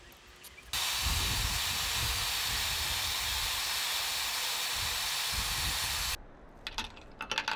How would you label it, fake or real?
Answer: real